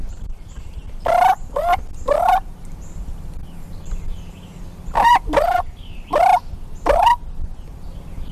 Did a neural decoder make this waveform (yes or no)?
no